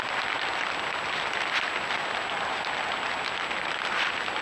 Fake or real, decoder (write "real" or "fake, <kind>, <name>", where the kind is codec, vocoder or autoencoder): real